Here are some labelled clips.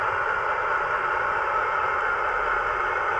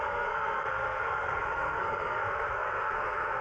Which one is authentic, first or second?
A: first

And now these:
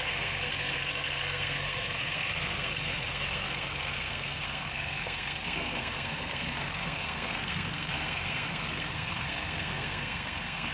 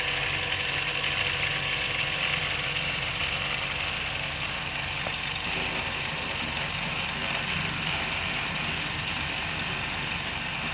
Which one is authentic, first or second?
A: second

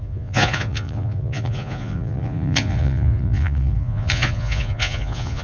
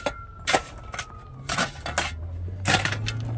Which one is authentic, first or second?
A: second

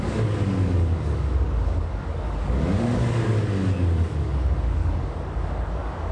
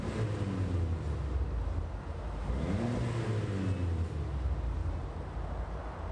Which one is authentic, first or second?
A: second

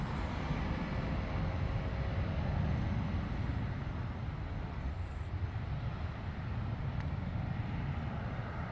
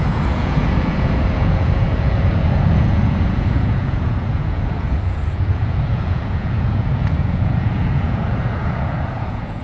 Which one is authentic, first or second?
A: first